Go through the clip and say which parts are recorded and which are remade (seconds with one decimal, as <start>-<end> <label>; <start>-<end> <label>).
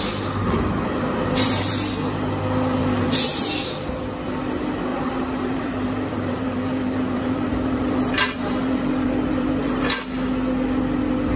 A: 0.0-0.4 recorded; 0.4-1.7 remade; 1.7-2.8 recorded; 2.8-3.9 remade; 3.9-4.9 recorded; 4.9-9.8 remade; 9.8-11.4 recorded